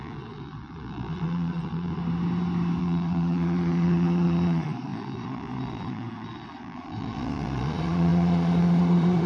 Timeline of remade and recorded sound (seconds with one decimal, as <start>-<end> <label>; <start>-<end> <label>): 0.0-2.0 remade; 2.0-2.8 recorded; 2.8-9.3 remade